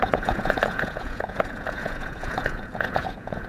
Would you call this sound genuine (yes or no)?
no